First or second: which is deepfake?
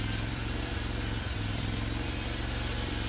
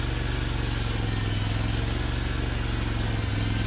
first